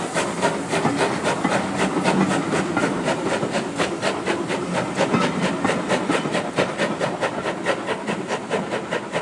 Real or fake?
real